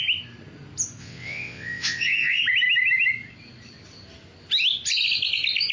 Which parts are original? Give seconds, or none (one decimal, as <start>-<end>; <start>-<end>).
0.0-1.0; 2.4-5.7